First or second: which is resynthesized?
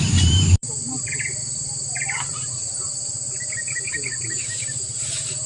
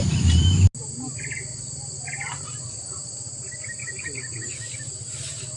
first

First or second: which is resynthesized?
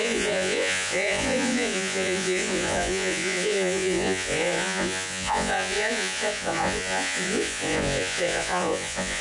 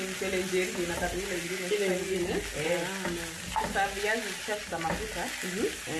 first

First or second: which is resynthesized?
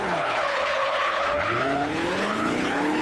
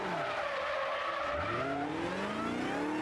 first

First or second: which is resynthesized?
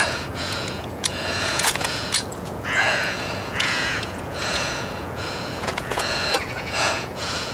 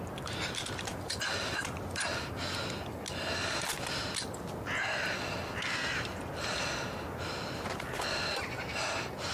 first